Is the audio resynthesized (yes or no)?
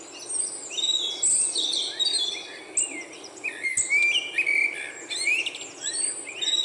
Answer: no